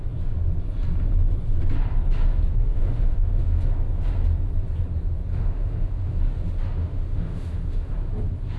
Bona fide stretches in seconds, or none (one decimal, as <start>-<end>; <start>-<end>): 0.0-2.7; 3.6-5.3; 6.2-6.8; 7.9-8.6